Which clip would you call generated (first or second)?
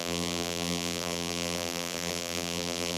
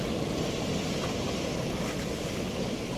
first